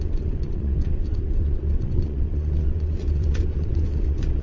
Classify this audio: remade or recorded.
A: remade